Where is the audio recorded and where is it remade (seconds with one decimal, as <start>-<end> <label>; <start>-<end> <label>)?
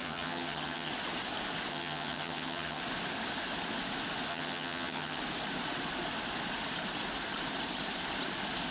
0.0-0.9 remade; 0.9-1.7 recorded; 1.7-2.8 remade; 2.8-4.3 recorded; 4.3-5.2 remade; 5.2-8.7 recorded